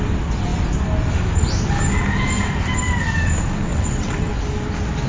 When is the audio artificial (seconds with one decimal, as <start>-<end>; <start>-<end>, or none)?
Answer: 3.7-4.3